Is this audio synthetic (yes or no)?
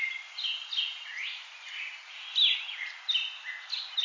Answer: no